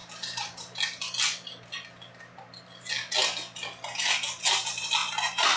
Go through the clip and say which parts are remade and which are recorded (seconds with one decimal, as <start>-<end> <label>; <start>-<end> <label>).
0.0-0.8 remade; 0.8-5.0 recorded; 5.0-5.6 remade